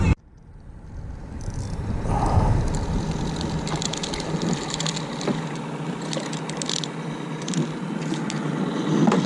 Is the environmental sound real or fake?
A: real